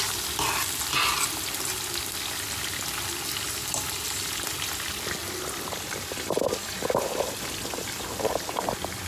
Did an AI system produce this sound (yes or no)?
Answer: no